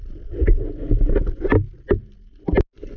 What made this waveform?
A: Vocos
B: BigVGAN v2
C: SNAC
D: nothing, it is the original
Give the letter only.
D